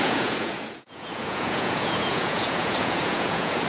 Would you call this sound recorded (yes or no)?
no